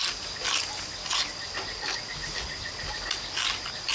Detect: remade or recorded recorded